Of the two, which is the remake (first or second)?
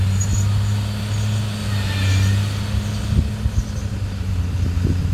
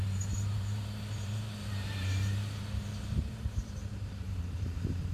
second